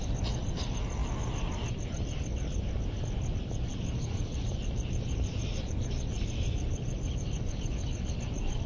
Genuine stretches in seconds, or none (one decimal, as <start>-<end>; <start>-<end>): 0.0-3.7; 8.2-8.7